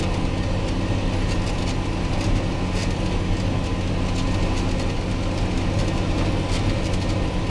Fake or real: real